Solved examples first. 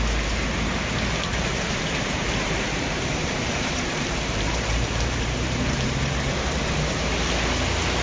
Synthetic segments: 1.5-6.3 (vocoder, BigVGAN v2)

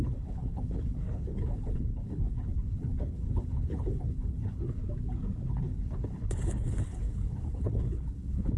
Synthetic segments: 0.0-4.8 (codec, HILCodec); 5.5-8.6

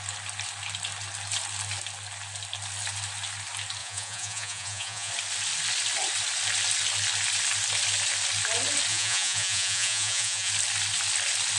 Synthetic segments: 3.8-5.1 (vocoder, Vocos); 8.9-10.5

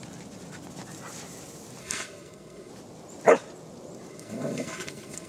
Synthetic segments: 1.8-2.7 (codec, SNAC); 4.1-5.3

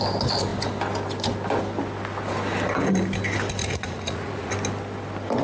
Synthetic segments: 3.6-4.5 (vocoder, Vocos)

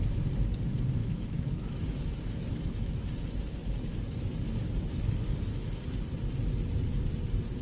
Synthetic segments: 1.0-3.0 (autoencoder, DAC-VAE)

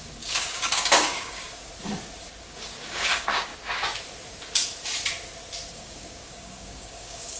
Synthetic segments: 0.0-1.7 (codec, DAC); 2.4-3.5; 5.7-7.4